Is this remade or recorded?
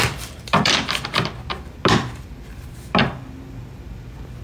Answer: remade